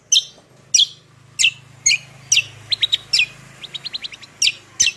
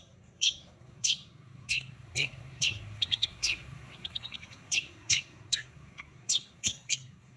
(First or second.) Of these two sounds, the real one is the first